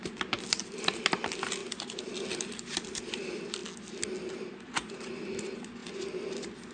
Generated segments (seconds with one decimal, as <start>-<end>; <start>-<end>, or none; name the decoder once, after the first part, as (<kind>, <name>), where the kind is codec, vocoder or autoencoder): 0.0-3.6 (vocoder, BigVGAN v2); 4.9-5.8; 6.3-6.7